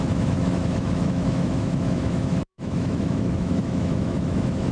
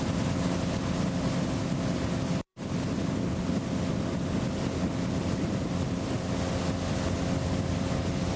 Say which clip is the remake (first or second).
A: first